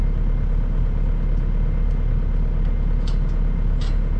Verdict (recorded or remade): recorded